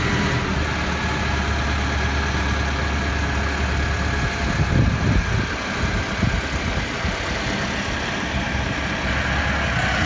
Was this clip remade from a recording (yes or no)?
no